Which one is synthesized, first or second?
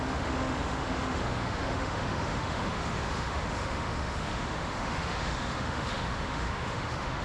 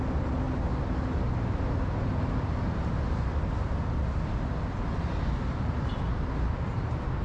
first